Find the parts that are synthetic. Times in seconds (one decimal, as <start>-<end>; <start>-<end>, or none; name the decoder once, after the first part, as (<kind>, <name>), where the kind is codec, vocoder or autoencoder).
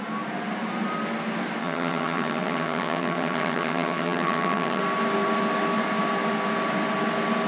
1.6-4.8 (vocoder, HiFi-GAN)